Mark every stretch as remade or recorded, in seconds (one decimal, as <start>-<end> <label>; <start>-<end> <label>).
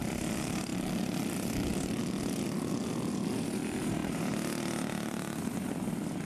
0.0-6.2 recorded